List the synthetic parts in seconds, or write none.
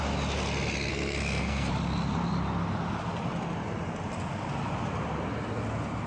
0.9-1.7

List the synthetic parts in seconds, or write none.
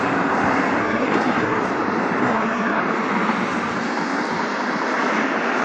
0.8-1.6; 2.2-2.8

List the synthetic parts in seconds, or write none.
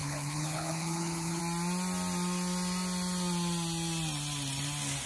0.0-1.4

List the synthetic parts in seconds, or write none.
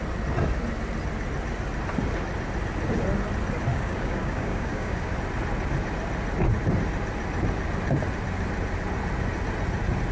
3.7-5.1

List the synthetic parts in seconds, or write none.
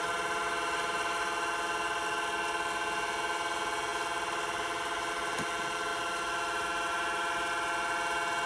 none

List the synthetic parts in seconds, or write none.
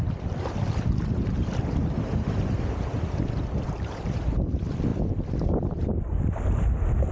none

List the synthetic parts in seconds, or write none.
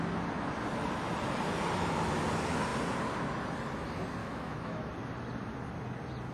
4.2-4.9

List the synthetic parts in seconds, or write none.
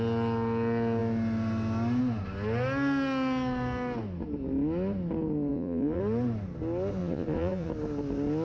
5.5-6.0; 7.0-7.7